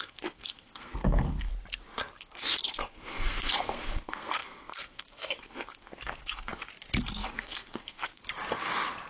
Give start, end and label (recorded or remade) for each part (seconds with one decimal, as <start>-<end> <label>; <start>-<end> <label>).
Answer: 0.0-1.5 remade; 1.5-2.2 recorded; 2.2-6.5 remade; 6.5-7.0 recorded; 7.0-8.2 remade; 8.2-9.1 recorded